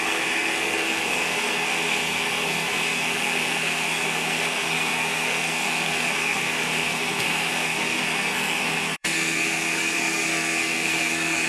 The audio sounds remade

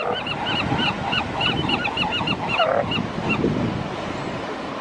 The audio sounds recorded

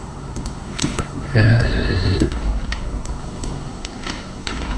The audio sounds remade